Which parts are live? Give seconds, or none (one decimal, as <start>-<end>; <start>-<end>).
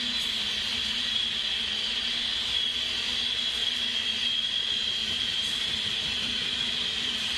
0.0-7.4